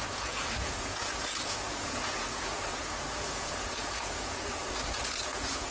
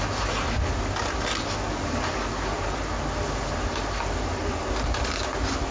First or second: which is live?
second